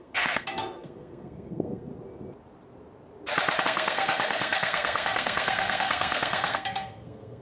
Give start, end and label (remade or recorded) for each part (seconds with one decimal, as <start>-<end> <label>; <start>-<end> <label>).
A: 0.0-1.9 remade; 1.9-3.6 recorded; 3.6-7.4 remade